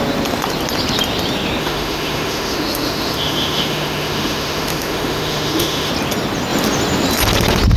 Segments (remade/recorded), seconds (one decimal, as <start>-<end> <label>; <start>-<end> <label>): 0.0-1.6 recorded; 1.6-5.9 remade; 5.9-7.8 recorded

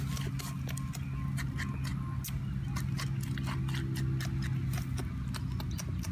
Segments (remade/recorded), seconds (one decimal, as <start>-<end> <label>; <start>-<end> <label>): 0.0-6.1 recorded

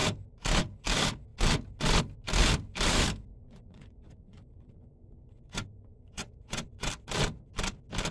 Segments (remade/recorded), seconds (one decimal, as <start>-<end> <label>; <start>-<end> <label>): 0.0-3.3 recorded; 3.3-6.9 remade; 6.9-8.1 recorded

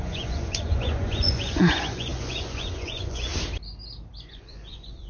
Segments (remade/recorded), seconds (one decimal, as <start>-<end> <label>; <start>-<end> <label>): 0.0-3.3 remade; 3.3-4.3 recorded; 4.3-5.1 remade

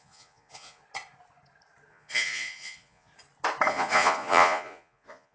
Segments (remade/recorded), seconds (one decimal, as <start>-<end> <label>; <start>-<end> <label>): 0.0-0.8 remade; 0.8-1.9 recorded; 1.9-3.1 remade; 3.1-3.7 recorded; 3.7-5.3 remade